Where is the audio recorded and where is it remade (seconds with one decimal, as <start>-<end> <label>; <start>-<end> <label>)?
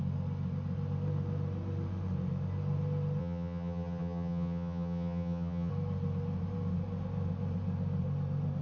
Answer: 0.0-3.2 recorded; 3.2-5.7 remade; 5.7-8.6 recorded